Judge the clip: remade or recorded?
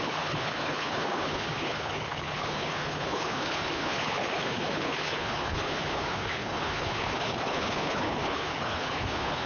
remade